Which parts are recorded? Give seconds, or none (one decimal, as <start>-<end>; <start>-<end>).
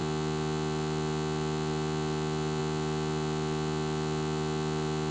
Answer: 0.0-5.1